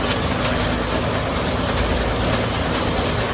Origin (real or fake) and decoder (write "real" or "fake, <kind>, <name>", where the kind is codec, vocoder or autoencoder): real